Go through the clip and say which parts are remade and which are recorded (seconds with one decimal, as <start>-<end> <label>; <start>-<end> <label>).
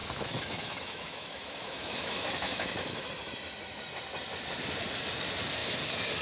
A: 0.0-3.1 remade; 3.1-6.2 recorded